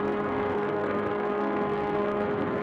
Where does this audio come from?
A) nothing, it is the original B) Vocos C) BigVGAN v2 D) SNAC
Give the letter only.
D